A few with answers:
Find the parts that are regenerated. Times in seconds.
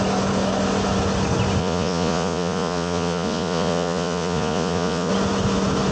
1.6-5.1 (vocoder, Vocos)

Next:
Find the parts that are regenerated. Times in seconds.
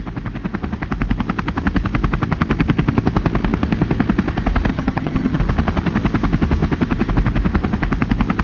4.7-5.4 (vocoder, HiFi-GAN)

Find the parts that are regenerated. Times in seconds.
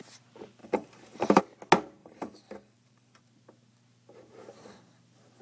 0.6-1.4 (vocoder, BigVGAN v2); 2.0-3.2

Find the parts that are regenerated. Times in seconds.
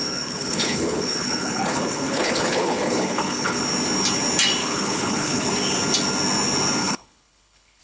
0.0-3.6 (codec, HILCodec); 4.6-5.5; 6.8-7.8